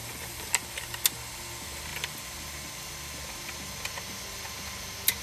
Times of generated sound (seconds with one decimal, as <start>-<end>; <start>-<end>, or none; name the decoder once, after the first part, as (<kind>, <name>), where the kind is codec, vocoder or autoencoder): 0.0-0.6 (vocoder, BigVGAN v2)